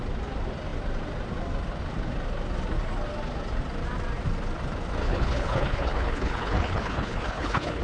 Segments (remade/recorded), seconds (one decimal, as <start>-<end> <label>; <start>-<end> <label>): 0.0-5.0 recorded; 5.0-7.8 remade